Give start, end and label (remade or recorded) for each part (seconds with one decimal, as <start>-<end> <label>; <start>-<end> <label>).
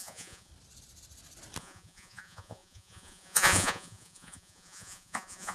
0.0-0.5 remade; 0.5-1.6 recorded; 1.6-5.5 remade